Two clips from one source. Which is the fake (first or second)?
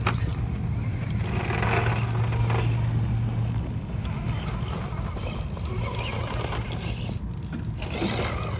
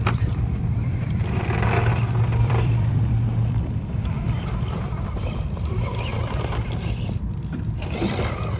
second